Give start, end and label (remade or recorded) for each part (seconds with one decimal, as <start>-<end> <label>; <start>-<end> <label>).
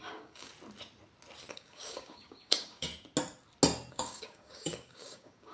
0.0-0.5 remade; 0.5-1.5 recorded; 1.5-2.9 remade; 2.9-3.9 recorded; 3.9-5.5 remade